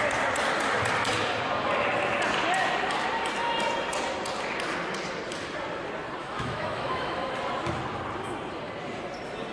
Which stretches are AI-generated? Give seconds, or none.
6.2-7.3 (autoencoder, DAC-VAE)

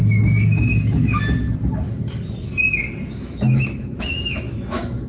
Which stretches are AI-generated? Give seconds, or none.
3.1-5.1 (autoencoder, DAC-VAE)

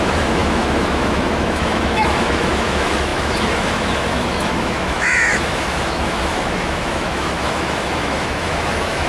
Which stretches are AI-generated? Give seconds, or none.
0.0-9.1 (autoencoder, DAC-VAE)

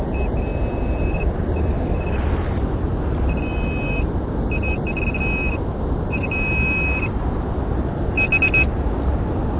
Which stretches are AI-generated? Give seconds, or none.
none